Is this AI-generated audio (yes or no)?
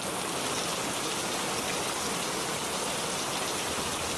no